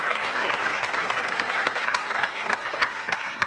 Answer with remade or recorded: remade